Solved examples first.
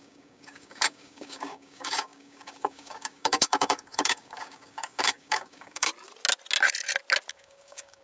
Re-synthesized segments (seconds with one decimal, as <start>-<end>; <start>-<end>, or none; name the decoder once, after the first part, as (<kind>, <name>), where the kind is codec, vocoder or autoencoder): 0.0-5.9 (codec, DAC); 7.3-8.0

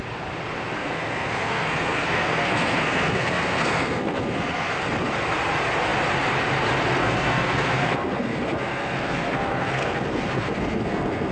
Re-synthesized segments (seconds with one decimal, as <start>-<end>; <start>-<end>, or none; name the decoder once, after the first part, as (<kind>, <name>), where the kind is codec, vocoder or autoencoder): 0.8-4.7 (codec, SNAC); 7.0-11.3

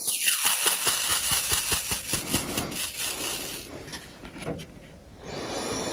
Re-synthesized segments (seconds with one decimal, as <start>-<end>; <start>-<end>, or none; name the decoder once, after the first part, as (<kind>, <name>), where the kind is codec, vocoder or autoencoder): 1.1-1.6 (autoencoder, DAC-VAE)

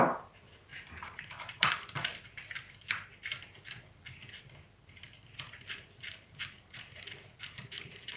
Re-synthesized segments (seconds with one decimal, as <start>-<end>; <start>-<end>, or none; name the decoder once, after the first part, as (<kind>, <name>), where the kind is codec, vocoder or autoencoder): 0.0-2.1 (vocoder, BigVGAN v2); 5.7-8.2